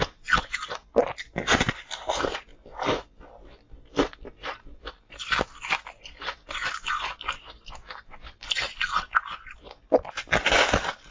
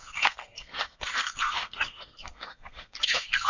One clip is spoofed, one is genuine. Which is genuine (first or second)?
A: first